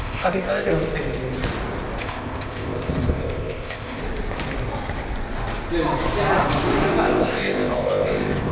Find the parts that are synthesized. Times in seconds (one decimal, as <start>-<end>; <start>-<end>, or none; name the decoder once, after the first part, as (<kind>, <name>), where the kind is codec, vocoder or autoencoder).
0.0-0.7 (codec, ZipCodec); 2.0-4.0; 7.0-8.5